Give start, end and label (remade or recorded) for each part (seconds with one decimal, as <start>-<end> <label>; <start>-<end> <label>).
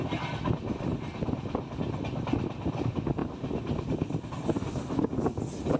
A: 0.0-5.8 recorded